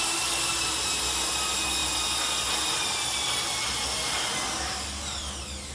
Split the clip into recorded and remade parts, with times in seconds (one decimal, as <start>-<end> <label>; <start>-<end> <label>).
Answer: 0.0-5.7 recorded

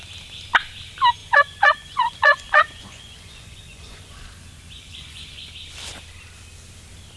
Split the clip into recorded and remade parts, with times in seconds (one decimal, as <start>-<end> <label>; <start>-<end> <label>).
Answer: 0.0-1.2 recorded; 1.2-5.5 remade; 5.5-7.2 recorded

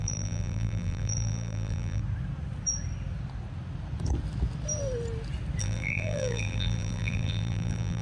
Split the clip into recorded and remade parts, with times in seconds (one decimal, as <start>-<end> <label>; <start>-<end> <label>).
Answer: 0.0-2.0 remade; 2.0-5.6 recorded; 5.6-8.0 remade

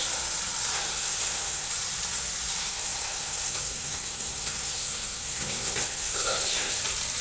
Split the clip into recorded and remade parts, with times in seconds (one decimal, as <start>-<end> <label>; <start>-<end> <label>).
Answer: 0.0-0.7 recorded; 0.7-1.7 remade; 1.7-2.6 recorded; 2.6-6.8 remade; 6.8-7.2 recorded